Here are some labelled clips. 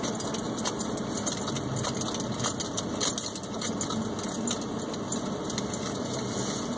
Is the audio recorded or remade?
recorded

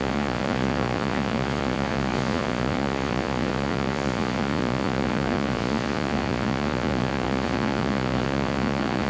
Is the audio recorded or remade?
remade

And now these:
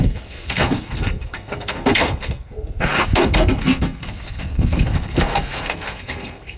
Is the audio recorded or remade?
remade